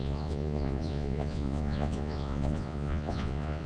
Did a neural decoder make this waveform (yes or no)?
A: yes